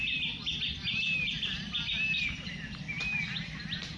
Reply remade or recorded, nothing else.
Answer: recorded